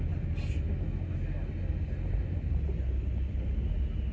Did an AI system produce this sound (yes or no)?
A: no